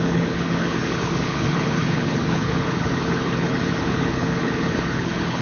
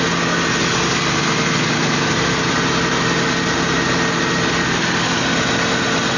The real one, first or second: second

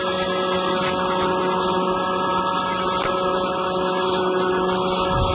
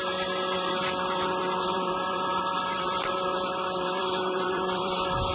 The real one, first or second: first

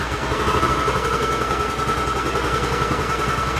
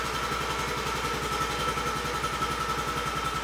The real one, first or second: second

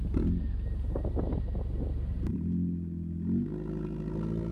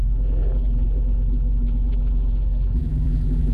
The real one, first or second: first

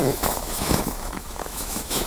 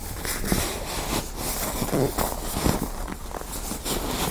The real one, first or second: second